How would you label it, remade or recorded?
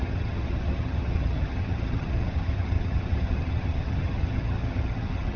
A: remade